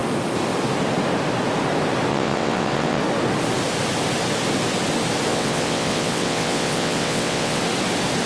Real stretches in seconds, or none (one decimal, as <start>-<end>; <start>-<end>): 0.0-2.1; 3.0-5.3; 7.6-8.3